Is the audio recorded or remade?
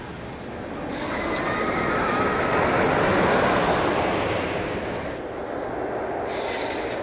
recorded